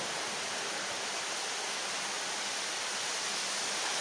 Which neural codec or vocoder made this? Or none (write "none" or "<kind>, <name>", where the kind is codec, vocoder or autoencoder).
none